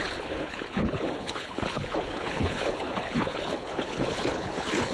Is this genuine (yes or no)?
no